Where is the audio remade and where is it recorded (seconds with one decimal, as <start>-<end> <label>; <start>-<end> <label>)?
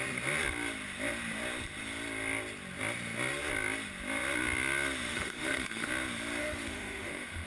0.0-5.1 recorded; 5.1-5.9 remade; 5.9-6.4 recorded; 6.4-7.5 remade